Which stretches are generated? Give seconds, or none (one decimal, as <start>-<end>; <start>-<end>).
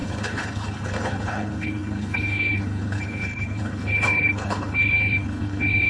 0.0-5.9